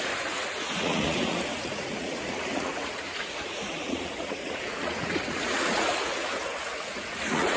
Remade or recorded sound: remade